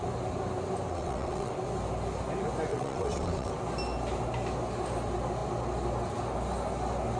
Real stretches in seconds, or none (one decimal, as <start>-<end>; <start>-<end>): 0.0-0.9; 1.5-2.7; 3.5-7.2